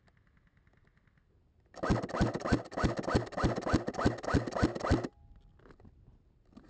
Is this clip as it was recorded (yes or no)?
yes